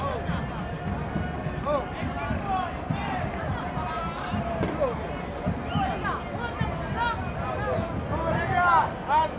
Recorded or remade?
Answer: recorded